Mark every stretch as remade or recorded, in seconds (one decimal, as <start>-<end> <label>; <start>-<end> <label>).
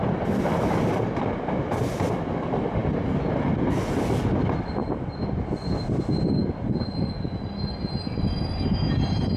0.0-9.4 recorded